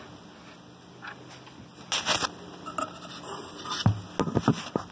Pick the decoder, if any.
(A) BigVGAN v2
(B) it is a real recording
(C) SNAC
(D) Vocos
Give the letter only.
B